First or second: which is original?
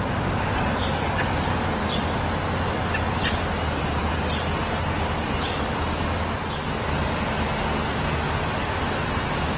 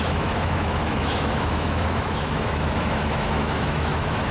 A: first